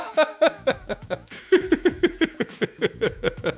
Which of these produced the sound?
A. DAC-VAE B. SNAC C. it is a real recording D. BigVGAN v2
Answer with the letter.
A